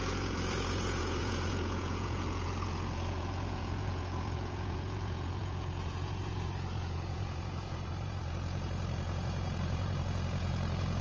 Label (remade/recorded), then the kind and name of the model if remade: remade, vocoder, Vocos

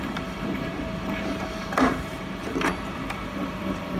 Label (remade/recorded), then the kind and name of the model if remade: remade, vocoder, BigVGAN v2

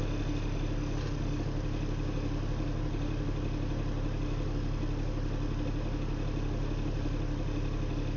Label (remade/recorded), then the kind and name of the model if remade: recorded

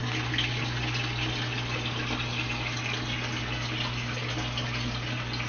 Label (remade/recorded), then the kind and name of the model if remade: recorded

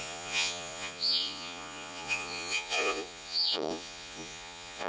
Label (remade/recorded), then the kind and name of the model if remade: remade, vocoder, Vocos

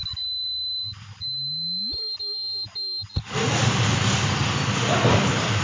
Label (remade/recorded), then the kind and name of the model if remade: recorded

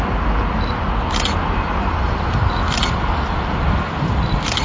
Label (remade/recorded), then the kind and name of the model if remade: recorded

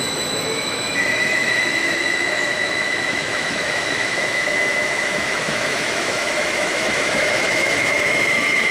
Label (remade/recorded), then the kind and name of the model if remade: remade, autoencoder, DAC-VAE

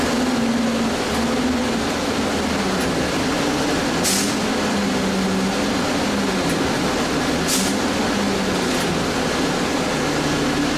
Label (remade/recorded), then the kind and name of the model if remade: recorded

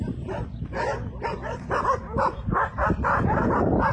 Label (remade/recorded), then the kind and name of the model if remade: remade, vocoder, BigVGAN v2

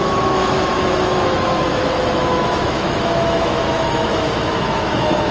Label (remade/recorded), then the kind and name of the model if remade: remade, autoencoder, DAC-VAE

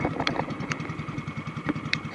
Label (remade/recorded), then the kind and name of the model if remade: remade, vocoder, BigVGAN v2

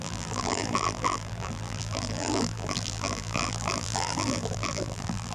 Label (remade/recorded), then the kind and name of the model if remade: remade, vocoder, BigVGAN v2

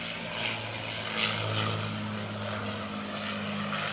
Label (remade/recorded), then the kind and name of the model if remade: recorded